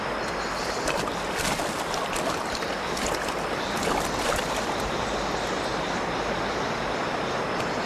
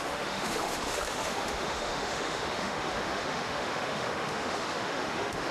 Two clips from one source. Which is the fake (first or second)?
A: second